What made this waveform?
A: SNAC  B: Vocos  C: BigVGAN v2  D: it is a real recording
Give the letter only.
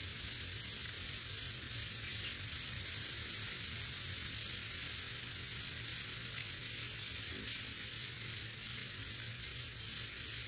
D